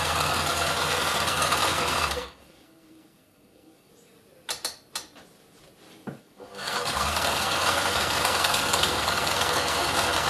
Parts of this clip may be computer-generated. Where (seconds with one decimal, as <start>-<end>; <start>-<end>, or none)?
0.0-3.9; 6.2-10.3